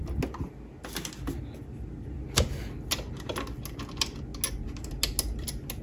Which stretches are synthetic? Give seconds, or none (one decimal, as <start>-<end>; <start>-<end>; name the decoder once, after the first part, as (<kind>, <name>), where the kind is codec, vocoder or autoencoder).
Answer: none